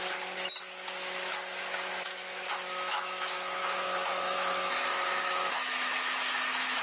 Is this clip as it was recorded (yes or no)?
no